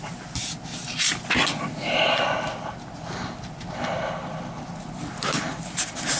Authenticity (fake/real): real